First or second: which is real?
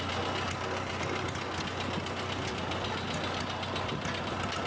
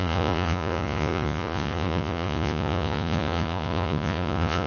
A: first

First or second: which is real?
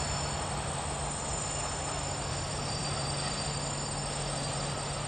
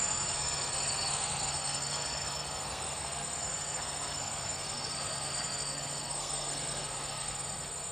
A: first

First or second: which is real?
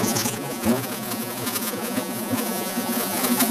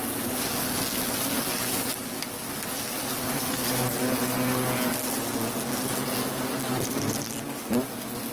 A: second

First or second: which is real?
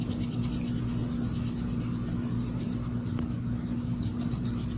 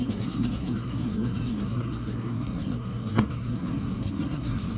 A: first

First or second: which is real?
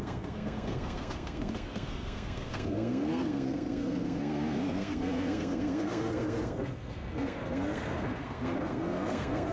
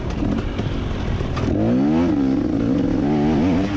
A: second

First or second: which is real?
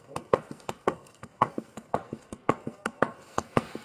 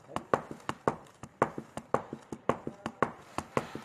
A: second